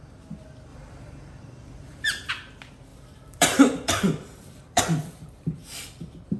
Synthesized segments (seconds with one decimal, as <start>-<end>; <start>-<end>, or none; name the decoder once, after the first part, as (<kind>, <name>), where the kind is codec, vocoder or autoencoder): 0.7-2.3 (vocoder, BigVGAN v2); 2.9-4.8